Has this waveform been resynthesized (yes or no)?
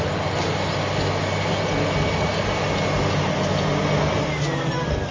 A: no